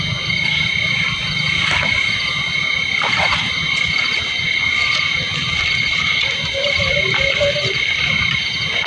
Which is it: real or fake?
real